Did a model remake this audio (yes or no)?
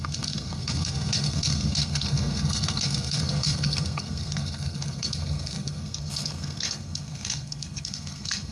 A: yes